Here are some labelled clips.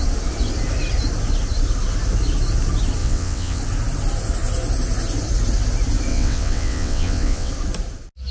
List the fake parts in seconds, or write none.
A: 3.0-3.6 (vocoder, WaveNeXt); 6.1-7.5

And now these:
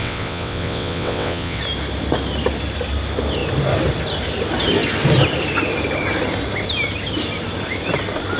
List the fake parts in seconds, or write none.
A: 0.0-1.6 (vocoder, WaveNeXt)

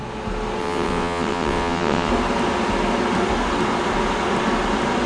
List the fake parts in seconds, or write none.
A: 0.6-2.1 (vocoder, WaveNeXt)

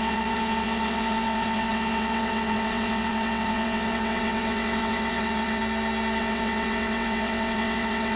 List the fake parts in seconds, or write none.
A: 0.0-5.6 (vocoder, WaveNeXt); 6.2-8.2

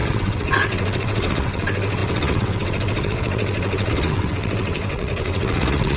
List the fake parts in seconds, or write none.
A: 0.0-6.0 (vocoder, WaveNeXt)

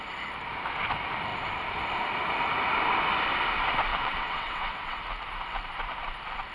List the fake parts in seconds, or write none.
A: 3.9-5.0 (vocoder, WaveNeXt)